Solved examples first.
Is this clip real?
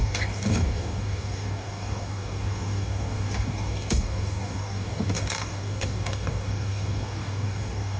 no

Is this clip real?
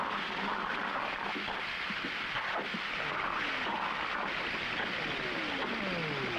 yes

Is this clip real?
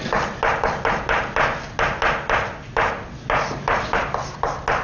yes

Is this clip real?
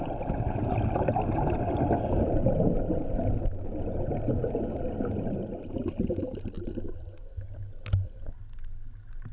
yes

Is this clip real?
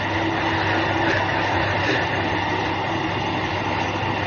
yes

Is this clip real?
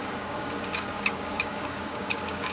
no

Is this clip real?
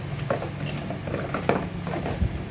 yes